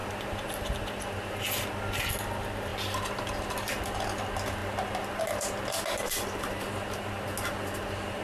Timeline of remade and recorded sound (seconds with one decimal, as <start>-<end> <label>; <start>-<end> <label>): 0.0-8.2 recorded